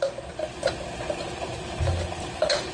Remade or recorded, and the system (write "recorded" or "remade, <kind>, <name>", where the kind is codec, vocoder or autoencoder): recorded